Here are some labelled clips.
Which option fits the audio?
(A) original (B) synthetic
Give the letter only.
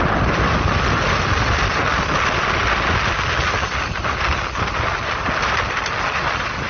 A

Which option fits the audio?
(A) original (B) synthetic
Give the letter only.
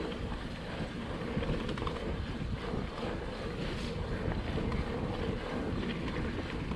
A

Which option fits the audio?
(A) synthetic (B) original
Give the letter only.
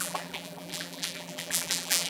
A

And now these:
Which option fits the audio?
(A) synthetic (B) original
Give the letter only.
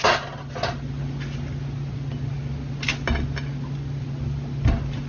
B